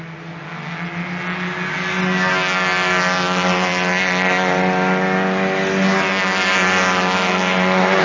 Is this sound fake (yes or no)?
no